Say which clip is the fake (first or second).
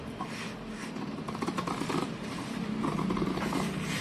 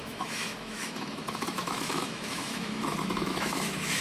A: second